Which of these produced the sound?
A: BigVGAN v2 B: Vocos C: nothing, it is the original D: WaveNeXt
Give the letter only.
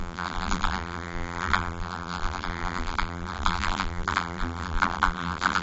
A